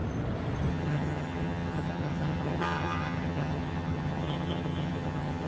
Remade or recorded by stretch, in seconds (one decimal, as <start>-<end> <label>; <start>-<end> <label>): 0.0-0.7 recorded; 0.7-5.5 remade